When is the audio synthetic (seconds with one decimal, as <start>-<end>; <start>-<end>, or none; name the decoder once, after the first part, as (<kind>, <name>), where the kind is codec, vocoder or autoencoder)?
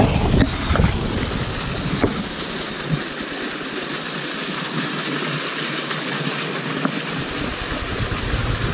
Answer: none